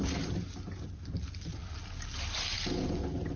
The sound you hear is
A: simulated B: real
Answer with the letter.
B